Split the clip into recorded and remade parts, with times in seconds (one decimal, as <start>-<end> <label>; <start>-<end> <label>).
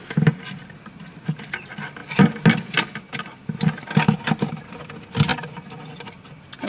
0.0-6.7 recorded